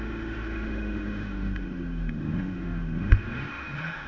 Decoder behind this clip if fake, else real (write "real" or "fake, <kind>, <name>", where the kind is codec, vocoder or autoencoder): fake, autoencoder, DAC-VAE